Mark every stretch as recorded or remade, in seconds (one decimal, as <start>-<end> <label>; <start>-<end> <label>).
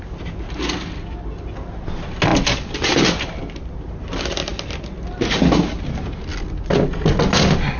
0.0-7.8 recorded